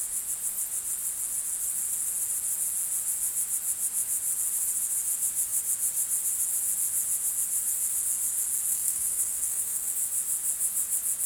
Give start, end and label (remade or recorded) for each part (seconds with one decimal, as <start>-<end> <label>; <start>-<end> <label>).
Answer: 0.0-8.7 recorded; 8.7-9.9 remade; 9.9-11.3 recorded